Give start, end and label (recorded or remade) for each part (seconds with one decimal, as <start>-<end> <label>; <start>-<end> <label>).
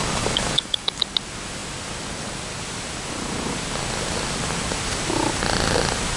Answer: 0.0-1.0 remade; 1.0-6.2 recorded